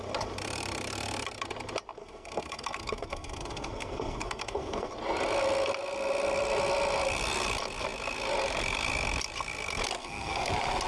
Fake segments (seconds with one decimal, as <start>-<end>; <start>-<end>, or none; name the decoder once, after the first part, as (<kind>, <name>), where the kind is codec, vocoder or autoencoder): 2.0-4.9 (codec, SNAC); 10.0-10.5